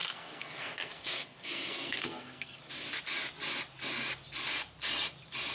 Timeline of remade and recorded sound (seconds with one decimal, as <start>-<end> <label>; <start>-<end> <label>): 0.0-2.7 remade; 2.7-5.5 recorded